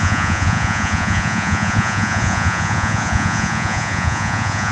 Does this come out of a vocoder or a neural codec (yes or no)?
yes